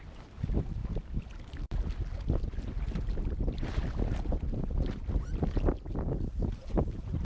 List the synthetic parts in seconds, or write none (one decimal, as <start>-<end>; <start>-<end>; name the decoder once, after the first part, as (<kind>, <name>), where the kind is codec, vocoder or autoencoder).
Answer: none